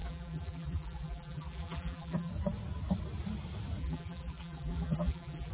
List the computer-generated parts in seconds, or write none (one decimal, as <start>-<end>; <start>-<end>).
0.0-2.3; 3.8-5.5